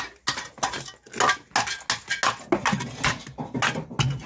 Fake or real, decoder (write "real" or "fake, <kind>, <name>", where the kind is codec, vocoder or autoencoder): real